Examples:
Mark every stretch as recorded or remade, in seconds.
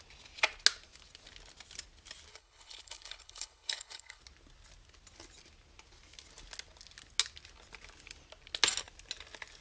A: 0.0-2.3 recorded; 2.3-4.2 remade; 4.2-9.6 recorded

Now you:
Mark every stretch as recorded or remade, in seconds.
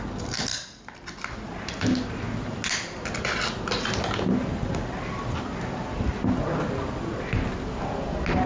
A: 0.0-8.5 recorded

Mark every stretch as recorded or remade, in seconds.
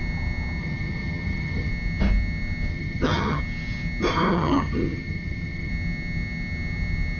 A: 0.0-0.6 recorded; 0.6-1.7 remade; 1.7-2.7 recorded; 2.7-3.4 remade; 3.4-4.3 recorded; 4.3-5.7 remade; 5.7-7.2 recorded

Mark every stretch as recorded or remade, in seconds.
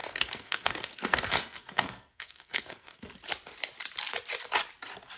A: 0.0-3.1 remade; 3.1-5.2 recorded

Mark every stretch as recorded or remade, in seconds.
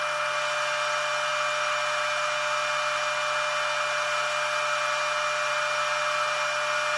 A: 0.0-7.0 recorded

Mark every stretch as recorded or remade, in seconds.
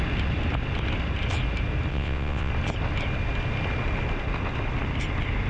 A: 0.0-1.9 recorded; 1.9-2.5 remade; 2.5-5.5 recorded